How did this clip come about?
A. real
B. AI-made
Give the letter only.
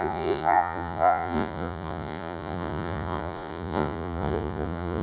B